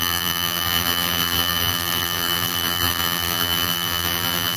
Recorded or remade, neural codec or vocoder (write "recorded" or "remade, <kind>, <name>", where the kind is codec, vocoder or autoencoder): remade, vocoder, BigVGAN v2